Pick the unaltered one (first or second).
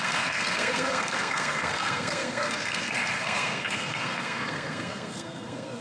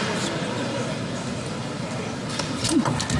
second